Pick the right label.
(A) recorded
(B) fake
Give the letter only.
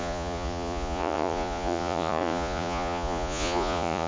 B